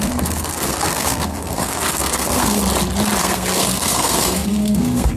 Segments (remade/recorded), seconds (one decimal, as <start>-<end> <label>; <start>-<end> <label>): 0.0-2.6 remade; 2.6-3.2 recorded; 3.2-5.2 remade